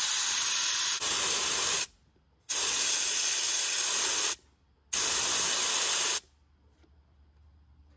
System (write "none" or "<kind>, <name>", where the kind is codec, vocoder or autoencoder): none